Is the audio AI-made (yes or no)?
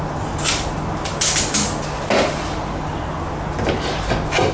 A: no